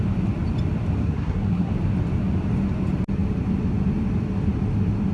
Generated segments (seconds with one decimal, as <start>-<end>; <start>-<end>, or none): 1.0-1.7